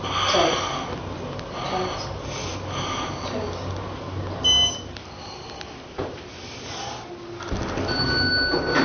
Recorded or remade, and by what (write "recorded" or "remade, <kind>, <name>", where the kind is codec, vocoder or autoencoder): recorded